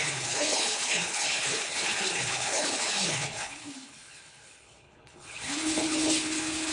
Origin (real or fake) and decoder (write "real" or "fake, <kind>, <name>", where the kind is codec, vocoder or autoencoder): fake, codec, HILCodec